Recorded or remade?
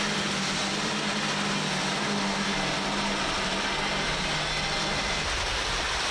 recorded